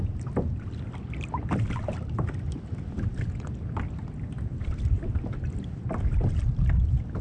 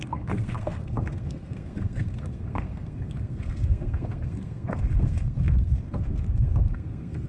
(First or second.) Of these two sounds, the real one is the first